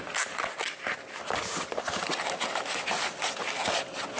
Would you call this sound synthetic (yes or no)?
no